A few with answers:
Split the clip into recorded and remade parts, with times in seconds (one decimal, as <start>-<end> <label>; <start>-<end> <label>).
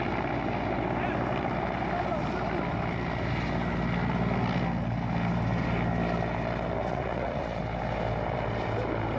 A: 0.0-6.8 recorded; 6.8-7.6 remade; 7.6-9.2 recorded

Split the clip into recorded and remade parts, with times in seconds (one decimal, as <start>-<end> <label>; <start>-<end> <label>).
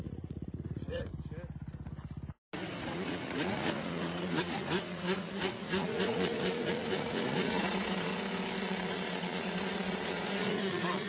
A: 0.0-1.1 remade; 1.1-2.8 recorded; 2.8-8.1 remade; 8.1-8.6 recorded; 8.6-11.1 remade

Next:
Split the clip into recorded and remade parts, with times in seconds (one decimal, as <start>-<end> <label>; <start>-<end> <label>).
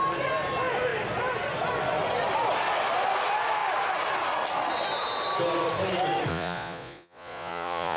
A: 0.0-6.3 recorded; 6.3-8.0 remade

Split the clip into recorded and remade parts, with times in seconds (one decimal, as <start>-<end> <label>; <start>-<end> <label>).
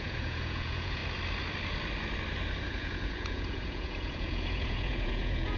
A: 0.0-1.0 remade; 1.0-2.6 recorded; 2.6-5.6 remade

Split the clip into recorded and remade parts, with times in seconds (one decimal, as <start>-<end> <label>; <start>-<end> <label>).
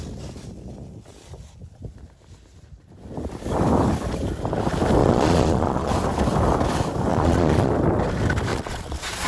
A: 0.0-5.0 recorded; 5.0-5.9 remade; 5.9-7.1 recorded; 7.1-7.7 remade; 7.7-8.5 recorded; 8.5-9.3 remade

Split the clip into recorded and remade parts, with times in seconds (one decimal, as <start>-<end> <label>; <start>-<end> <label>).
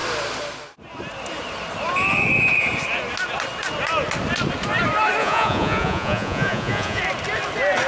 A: 0.0-5.2 recorded; 5.2-7.0 remade; 7.0-7.9 recorded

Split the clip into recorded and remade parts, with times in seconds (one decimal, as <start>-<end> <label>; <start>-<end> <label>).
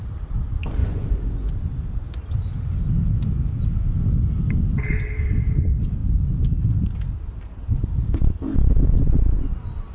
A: 0.0-0.8 recorded; 0.8-1.5 remade; 1.5-9.9 recorded